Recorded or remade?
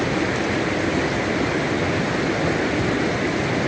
recorded